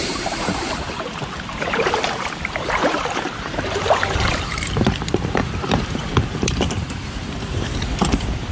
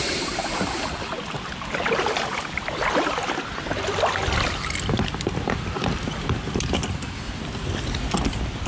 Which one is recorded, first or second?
second